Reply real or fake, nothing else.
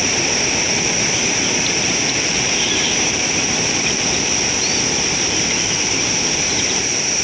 fake